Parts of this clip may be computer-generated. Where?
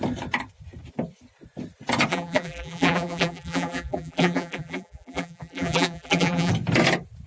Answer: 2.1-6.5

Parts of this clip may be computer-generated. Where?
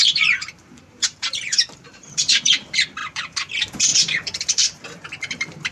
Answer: 0.0-5.7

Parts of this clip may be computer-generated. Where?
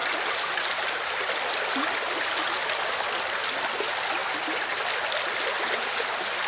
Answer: none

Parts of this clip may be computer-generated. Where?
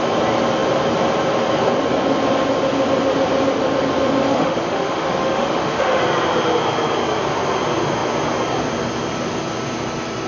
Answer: 4.3-6.0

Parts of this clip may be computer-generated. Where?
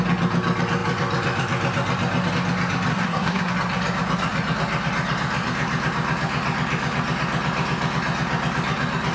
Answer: 2.9-3.5